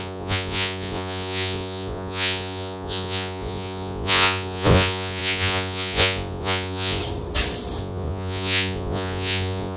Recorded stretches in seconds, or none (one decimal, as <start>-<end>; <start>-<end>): 7.0-7.8